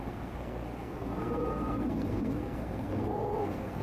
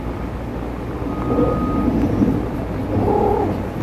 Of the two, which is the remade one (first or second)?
first